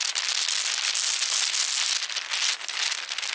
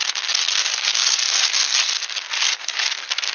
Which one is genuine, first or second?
first